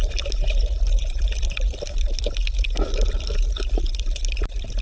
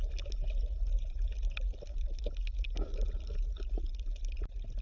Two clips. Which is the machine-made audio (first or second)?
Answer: first